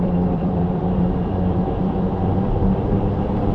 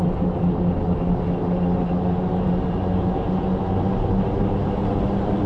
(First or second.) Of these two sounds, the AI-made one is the first